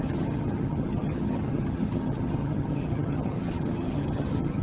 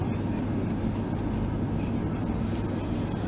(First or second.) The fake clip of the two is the first